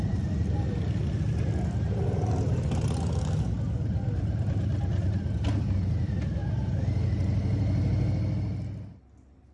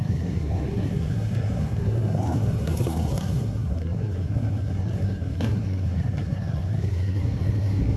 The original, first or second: first